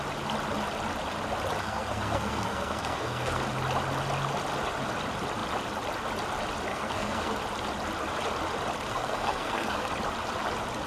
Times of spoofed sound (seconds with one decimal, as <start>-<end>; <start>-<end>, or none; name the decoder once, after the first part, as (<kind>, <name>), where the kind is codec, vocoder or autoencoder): 1.6-3.4 (codec, SNAC); 6.7-7.3; 8.9-9.9